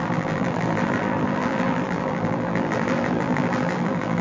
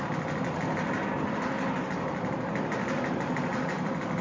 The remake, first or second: first